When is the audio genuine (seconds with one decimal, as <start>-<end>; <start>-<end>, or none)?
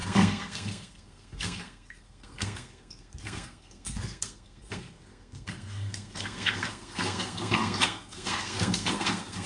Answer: none